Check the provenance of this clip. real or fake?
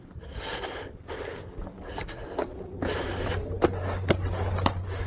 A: real